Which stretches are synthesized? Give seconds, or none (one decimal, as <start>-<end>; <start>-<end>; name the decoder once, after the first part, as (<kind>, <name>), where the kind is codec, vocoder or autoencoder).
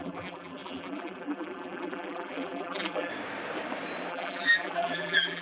0.0-3.1 (vocoder, BigVGAN v2); 4.1-5.4